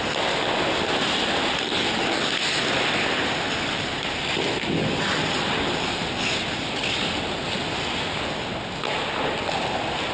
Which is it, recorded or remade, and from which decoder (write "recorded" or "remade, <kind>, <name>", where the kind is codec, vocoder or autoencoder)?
recorded